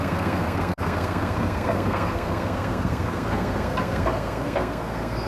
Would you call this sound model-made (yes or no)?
yes